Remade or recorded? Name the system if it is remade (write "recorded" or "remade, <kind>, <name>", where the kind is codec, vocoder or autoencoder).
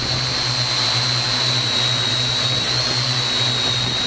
recorded